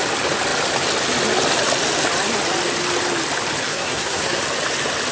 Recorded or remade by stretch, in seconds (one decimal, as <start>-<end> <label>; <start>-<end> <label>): 0.0-3.7 recorded; 3.7-4.4 remade; 4.4-5.1 recorded